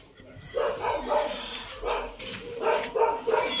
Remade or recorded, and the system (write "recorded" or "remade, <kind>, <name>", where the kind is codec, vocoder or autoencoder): recorded